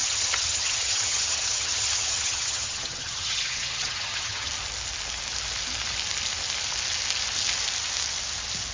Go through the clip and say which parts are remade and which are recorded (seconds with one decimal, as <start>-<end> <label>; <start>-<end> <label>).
0.0-4.5 remade; 4.5-8.7 recorded